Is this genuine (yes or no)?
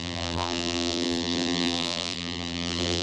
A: no